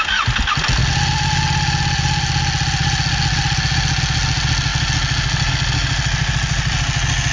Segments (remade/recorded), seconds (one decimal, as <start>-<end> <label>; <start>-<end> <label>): 0.0-7.3 recorded